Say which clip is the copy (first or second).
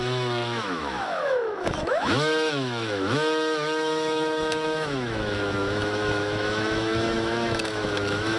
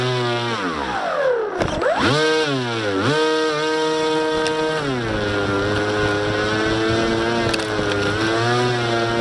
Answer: first